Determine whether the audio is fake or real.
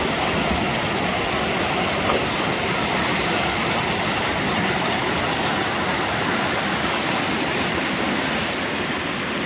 real